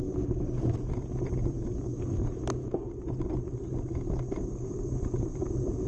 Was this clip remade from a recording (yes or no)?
no